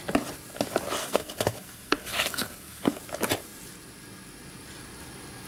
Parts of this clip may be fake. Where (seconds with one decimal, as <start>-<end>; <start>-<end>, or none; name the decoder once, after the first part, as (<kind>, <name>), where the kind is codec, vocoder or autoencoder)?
1.0-3.0 (codec, SNAC)